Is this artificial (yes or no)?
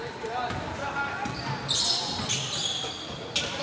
yes